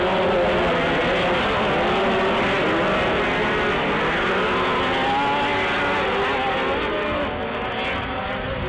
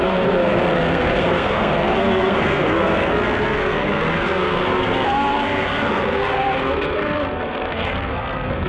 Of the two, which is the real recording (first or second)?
first